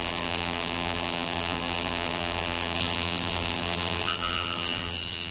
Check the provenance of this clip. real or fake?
fake